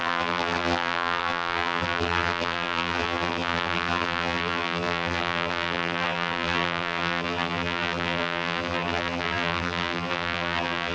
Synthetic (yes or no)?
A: yes